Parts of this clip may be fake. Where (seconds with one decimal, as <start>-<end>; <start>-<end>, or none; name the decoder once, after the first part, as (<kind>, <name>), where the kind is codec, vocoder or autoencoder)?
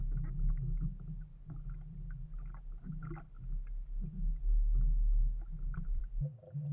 5.5-6.0 (vocoder, BigVGAN v2)